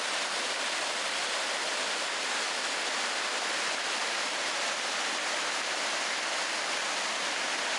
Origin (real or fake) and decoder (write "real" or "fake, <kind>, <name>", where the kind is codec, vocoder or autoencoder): real